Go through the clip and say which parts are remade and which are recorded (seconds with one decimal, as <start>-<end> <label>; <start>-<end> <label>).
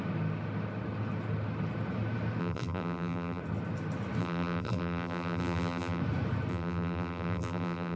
0.0-2.4 recorded; 2.4-3.4 remade; 3.4-4.2 recorded; 4.2-6.0 remade; 6.0-6.5 recorded; 6.5-8.0 remade